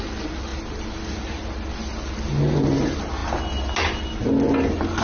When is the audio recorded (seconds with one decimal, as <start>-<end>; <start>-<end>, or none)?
0.0-5.0

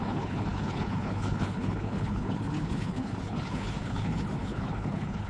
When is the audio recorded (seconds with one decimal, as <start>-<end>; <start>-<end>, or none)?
none